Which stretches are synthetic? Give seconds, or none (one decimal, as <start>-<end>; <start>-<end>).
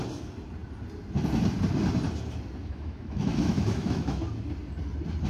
2.6-4.2